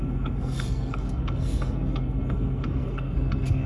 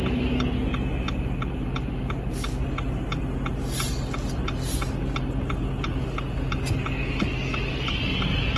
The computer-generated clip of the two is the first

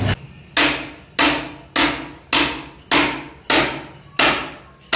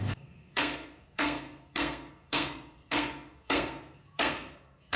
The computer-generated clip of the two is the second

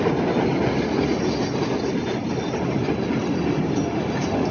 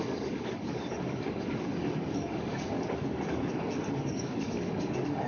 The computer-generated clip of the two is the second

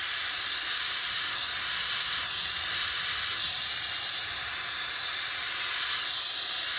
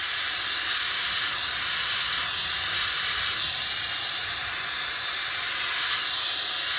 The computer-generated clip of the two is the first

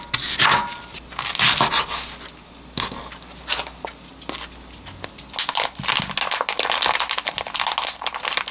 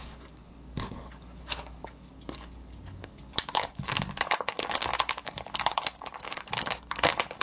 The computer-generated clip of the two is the second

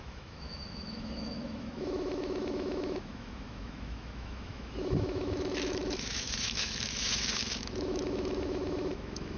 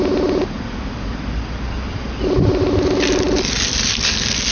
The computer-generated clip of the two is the first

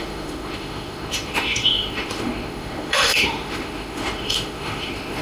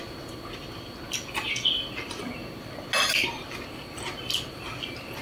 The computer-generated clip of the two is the first